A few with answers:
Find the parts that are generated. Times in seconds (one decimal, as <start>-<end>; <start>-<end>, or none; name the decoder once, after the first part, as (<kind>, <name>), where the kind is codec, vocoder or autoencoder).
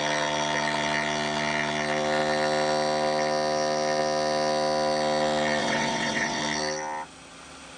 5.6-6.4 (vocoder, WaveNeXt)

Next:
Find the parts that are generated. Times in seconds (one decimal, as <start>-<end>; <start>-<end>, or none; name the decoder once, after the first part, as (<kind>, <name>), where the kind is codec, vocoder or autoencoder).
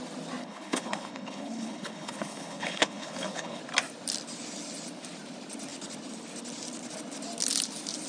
0.4-3.6 (codec, HILCodec)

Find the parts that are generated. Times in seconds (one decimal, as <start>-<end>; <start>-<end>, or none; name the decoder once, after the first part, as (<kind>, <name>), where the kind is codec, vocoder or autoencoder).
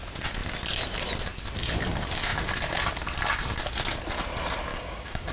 4.7-5.3 (codec, DAC)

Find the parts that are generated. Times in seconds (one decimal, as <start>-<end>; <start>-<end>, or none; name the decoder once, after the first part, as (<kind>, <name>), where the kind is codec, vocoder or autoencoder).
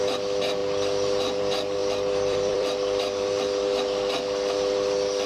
0.6-1.4 (vocoder, BigVGAN v2); 1.8-5.3